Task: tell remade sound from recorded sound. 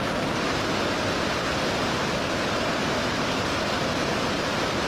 recorded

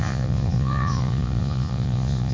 remade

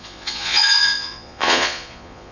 remade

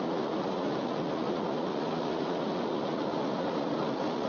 remade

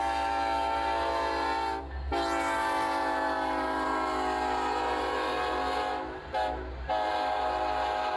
recorded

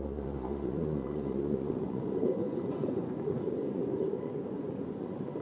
remade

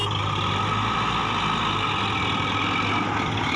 recorded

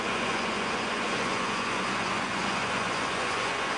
remade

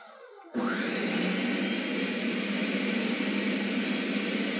recorded